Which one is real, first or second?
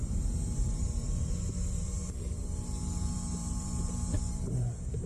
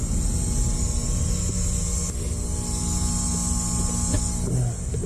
second